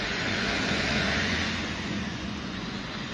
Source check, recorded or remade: remade